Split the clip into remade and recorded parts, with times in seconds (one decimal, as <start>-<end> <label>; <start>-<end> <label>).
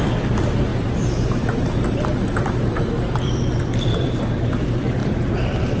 0.0-0.7 recorded; 0.7-4.2 remade; 4.2-5.0 recorded; 5.0-5.8 remade